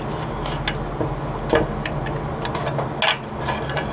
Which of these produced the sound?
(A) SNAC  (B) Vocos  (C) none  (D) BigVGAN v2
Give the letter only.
C